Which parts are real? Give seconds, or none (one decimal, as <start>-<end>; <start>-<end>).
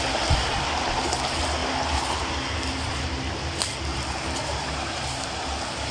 0.0-3.9